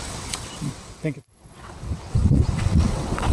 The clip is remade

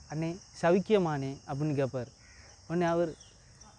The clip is recorded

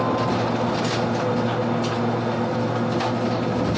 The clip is recorded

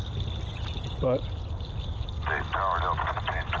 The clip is recorded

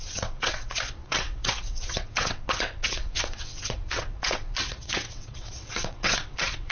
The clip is remade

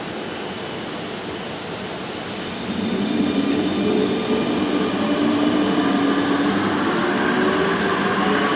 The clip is recorded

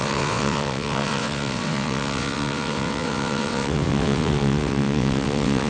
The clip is remade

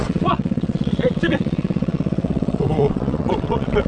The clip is remade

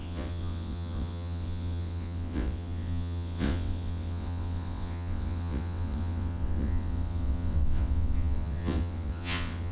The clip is remade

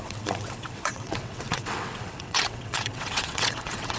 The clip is remade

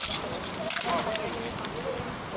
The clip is recorded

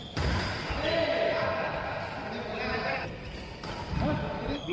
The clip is recorded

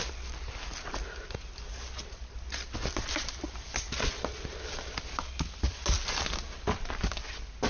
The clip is recorded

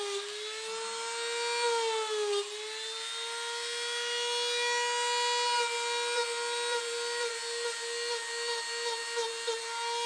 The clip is recorded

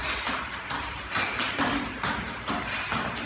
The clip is recorded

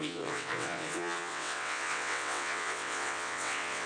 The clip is remade